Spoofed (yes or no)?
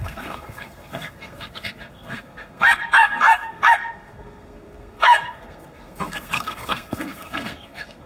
yes